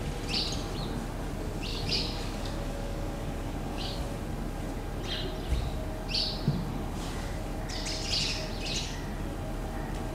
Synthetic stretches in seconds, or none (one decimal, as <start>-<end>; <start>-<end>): 1.7-4.0